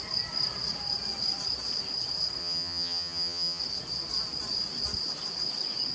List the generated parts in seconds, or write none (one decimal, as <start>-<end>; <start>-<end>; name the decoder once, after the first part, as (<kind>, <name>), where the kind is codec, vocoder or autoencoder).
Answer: 2.4-3.6 (vocoder, HiFi-GAN)

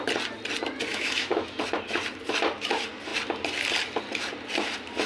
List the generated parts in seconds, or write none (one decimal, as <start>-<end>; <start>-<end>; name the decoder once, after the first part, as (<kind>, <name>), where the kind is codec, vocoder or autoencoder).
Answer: 0.9-1.6 (autoencoder, DAC-VAE)

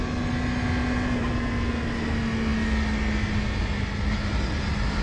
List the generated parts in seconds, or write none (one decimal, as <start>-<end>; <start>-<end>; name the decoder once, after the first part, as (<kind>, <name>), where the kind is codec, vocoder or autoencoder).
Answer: none

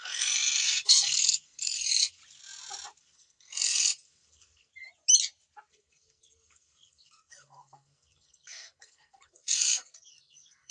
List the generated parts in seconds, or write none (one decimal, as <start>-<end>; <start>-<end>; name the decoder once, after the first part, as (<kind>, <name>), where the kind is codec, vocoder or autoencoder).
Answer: 0.0-2.2 (codec, SNAC); 3.0-4.7; 5.7-10.7

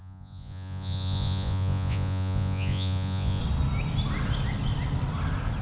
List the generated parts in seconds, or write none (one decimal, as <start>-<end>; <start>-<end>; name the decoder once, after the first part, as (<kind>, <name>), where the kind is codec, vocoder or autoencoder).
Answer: 0.0-3.4 (vocoder, Vocos)

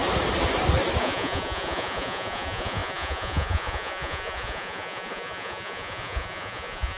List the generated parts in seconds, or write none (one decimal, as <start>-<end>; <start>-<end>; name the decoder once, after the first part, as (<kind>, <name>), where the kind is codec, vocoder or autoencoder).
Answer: 1.0-7.0 (vocoder, Vocos)

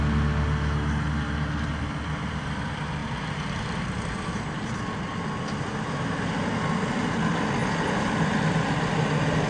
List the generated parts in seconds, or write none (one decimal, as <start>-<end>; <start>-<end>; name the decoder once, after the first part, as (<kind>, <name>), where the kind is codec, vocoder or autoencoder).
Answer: 3.0-4.6 (vocoder, BigVGAN v2)